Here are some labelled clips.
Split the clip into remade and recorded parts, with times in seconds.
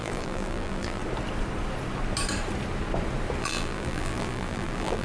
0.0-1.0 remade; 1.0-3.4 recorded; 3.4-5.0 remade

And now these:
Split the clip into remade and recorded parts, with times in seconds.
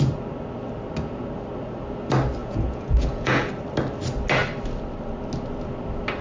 0.0-2.4 recorded; 2.4-3.5 remade; 3.5-6.2 recorded